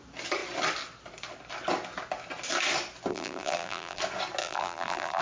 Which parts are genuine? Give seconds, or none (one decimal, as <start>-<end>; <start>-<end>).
0.0-3.1; 4.0-4.4